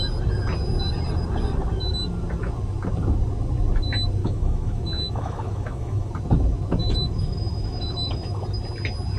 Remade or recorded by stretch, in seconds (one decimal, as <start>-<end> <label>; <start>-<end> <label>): 0.0-4.2 recorded; 4.2-6.1 remade; 6.1-6.8 recorded; 6.8-8.4 remade; 8.4-9.2 recorded

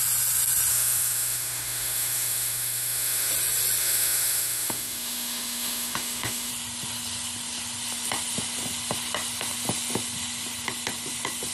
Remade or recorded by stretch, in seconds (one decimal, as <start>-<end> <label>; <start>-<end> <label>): 0.0-0.7 recorded; 0.7-3.3 remade; 3.3-3.8 recorded; 3.8-6.5 remade; 6.5-11.5 recorded